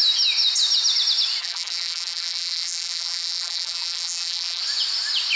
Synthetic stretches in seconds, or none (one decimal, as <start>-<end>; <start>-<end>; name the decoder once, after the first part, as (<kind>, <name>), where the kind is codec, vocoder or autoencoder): 1.4-4.6 (vocoder, BigVGAN v2)